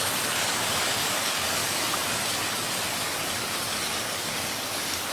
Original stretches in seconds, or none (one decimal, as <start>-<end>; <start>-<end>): none